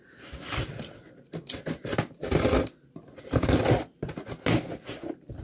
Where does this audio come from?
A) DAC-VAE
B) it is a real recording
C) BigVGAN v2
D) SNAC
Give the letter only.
B